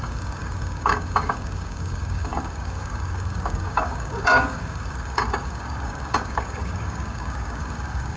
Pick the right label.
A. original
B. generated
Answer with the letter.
B